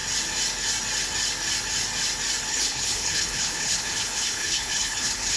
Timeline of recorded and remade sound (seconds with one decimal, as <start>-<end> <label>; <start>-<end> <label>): 0.0-2.5 recorded; 2.5-5.4 remade